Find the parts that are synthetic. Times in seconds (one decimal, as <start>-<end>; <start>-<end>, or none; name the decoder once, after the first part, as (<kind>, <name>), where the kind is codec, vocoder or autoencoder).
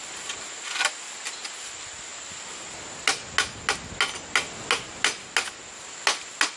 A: none